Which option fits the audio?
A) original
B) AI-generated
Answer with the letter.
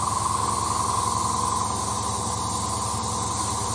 A